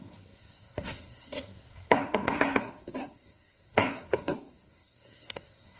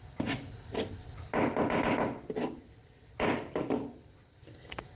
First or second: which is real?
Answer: second